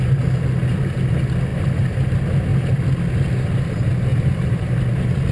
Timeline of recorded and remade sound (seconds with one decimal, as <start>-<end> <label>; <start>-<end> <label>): 0.0-1.5 recorded; 1.5-2.1 remade; 2.1-4.1 recorded; 4.1-4.7 remade; 4.7-5.3 recorded